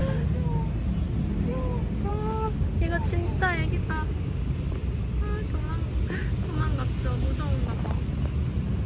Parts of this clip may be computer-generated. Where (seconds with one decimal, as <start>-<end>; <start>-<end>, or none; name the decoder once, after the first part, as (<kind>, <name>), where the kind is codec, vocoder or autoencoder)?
2.1-2.8 (codec, DAC); 3.8-4.5